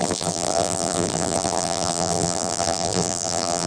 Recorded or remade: remade